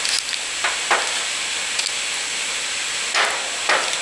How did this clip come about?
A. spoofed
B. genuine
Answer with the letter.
B